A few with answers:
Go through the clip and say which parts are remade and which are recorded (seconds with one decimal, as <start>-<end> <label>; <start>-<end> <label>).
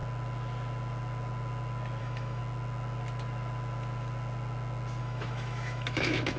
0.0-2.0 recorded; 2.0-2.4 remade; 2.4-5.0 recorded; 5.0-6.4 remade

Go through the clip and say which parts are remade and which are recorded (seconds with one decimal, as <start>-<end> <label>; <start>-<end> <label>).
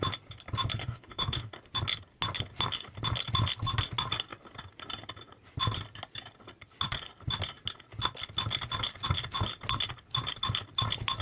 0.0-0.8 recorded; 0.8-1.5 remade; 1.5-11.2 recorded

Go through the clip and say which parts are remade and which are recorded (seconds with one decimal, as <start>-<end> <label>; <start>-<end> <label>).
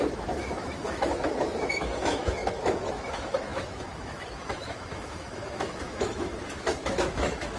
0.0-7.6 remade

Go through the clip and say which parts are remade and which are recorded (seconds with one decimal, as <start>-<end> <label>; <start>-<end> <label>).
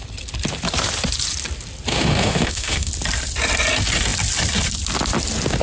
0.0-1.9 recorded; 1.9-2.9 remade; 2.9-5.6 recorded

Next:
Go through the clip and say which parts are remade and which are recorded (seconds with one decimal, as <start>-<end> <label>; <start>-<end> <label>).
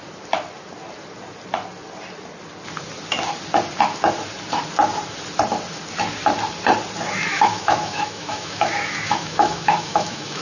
0.0-7.3 recorded; 7.3-10.4 remade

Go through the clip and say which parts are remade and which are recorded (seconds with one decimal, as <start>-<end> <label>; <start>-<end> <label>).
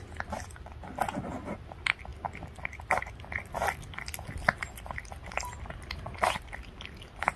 0.0-7.4 recorded